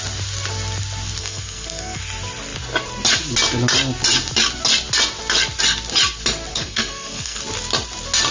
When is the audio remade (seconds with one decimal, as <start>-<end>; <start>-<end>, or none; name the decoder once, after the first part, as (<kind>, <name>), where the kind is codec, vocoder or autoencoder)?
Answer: 1.2-2.0 (codec, SNAC); 6.5-7.4